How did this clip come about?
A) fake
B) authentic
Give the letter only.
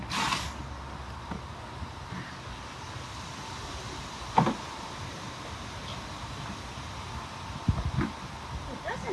B